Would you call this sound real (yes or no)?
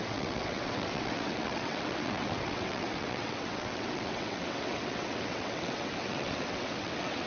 no